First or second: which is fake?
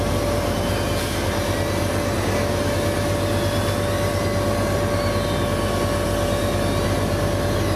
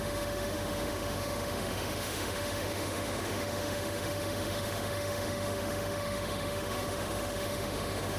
second